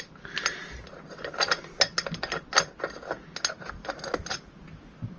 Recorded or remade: recorded